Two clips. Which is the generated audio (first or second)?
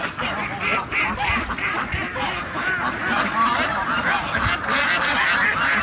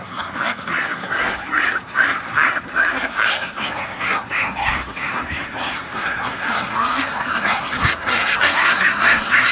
second